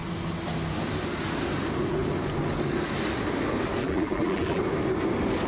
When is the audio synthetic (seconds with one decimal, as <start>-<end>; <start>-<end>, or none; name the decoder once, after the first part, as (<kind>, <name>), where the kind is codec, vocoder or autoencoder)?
3.8-4.6 (vocoder, BigVGAN v2)